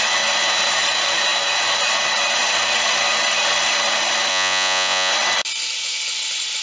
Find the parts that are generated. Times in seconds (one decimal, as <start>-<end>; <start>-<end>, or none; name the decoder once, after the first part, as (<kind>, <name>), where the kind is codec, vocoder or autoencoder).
4.3-5.1 (vocoder, Vocos)